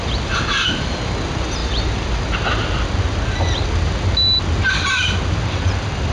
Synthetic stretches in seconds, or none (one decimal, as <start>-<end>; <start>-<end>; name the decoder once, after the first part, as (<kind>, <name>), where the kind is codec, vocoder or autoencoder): none

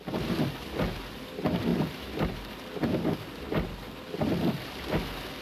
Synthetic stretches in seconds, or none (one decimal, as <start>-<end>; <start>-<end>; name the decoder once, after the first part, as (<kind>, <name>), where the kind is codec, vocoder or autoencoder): 1.7-2.5 (vocoder, BigVGAN v2)

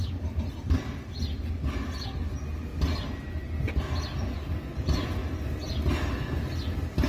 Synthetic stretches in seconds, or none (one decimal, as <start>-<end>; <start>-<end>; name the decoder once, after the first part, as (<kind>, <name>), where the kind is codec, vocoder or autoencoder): none

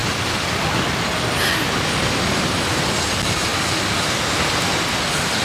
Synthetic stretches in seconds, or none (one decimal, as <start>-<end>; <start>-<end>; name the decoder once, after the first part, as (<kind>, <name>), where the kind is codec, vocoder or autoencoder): none

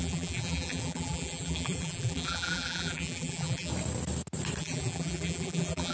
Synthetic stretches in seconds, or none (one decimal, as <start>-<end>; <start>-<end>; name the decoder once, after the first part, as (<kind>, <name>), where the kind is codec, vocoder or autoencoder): 0.0-3.7 (vocoder, BigVGAN v2); 4.6-5.9

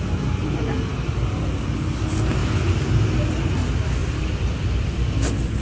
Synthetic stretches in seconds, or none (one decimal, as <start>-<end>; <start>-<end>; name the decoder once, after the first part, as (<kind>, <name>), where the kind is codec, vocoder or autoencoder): 0.9-1.6 (vocoder, BigVGAN v2); 2.4-3.3; 4.0-5.6